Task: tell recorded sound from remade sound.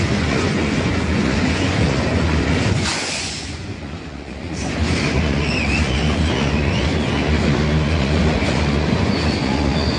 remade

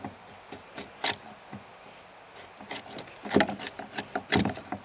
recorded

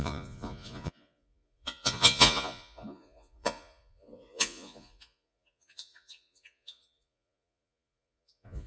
remade